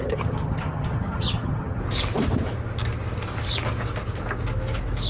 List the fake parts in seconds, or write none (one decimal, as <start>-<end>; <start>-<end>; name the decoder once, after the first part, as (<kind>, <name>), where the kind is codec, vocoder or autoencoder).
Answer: 0.0-1.8 (vocoder, HiFi-GAN)